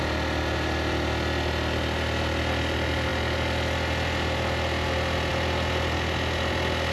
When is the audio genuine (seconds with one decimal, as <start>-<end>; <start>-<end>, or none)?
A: 0.0-6.9